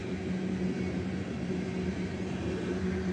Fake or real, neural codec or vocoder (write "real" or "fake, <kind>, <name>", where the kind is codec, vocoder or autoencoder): real